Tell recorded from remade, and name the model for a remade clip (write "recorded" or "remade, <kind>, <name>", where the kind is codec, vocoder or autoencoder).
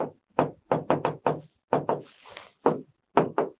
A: recorded